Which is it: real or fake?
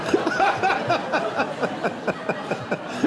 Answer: real